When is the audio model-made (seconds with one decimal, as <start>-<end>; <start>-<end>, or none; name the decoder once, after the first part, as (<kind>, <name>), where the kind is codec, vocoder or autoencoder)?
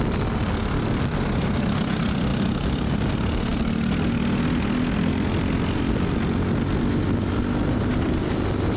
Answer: none